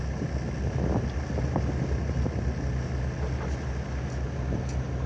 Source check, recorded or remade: recorded